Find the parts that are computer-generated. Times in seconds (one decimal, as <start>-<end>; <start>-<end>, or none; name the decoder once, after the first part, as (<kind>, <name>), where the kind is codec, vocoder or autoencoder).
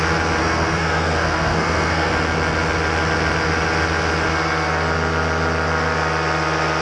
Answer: 0.4-2.1 (codec, SNAC)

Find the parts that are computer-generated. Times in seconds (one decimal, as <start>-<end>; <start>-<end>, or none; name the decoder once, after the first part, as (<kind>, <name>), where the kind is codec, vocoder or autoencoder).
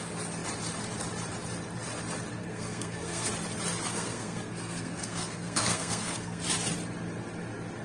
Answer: 2.4-3.3 (codec, SNAC); 3.9-6.4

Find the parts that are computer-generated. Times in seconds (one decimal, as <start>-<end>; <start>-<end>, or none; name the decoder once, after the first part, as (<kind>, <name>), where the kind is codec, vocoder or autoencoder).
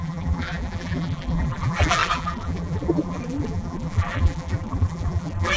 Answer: 0.0-5.6 (vocoder, BigVGAN v2)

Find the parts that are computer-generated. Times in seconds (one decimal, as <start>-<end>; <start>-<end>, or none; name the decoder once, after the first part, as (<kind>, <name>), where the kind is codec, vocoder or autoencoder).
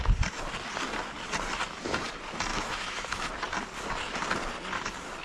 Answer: 2.5-3.3 (autoencoder, DAC-VAE)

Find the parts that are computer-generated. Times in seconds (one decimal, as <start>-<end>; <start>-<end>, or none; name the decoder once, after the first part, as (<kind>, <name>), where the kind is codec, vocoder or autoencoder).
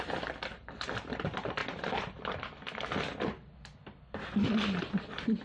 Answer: none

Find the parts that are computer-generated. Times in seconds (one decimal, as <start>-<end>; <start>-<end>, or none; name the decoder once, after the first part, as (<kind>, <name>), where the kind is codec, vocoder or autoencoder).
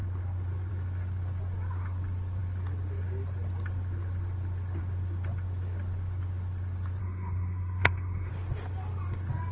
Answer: 7.0-8.3 (codec, SNAC)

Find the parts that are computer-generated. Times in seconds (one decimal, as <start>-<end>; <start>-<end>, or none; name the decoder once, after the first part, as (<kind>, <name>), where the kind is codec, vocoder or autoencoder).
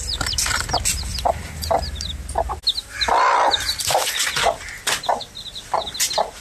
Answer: none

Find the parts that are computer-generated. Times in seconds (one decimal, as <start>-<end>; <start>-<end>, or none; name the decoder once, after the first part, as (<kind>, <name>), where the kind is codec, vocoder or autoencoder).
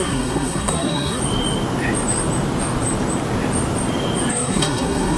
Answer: 0.0-1.2 (codec, SNAC); 4.3-5.2